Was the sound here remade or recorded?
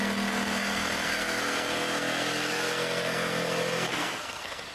remade